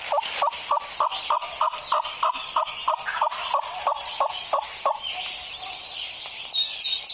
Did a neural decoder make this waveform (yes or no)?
no